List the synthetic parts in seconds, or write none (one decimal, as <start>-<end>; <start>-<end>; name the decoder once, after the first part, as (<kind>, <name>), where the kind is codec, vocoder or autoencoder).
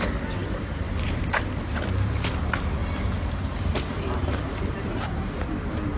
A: 0.4-1.4 (vocoder, BigVGAN v2); 2.8-5.3